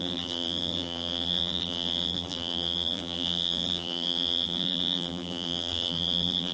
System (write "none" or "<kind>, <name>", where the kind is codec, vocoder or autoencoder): vocoder, BigVGAN v2